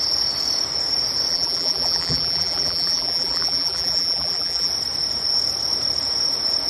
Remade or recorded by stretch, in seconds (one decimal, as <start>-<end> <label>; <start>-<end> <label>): 0.0-1.3 recorded; 1.3-4.7 remade; 4.7-6.7 recorded